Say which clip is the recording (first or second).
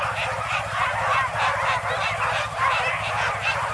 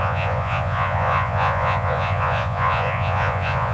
first